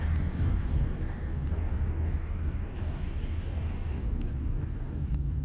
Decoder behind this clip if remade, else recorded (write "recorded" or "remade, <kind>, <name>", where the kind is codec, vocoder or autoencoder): remade, codec, DAC